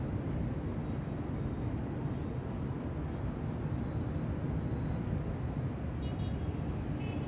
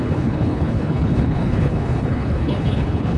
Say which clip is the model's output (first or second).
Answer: second